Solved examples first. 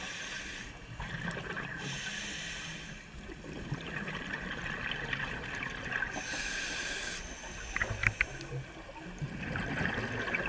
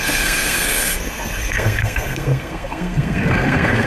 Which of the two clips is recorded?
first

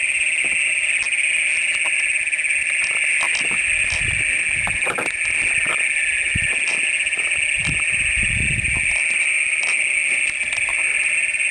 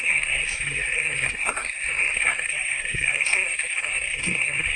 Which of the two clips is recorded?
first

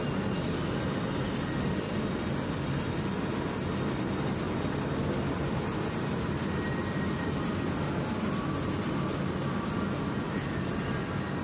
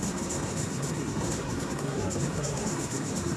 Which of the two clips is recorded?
first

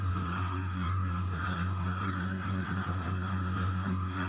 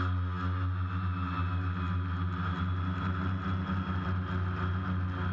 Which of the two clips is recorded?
second